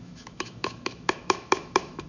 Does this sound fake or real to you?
fake